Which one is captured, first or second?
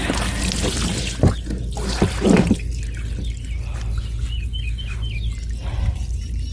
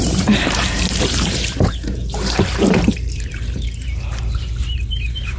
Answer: first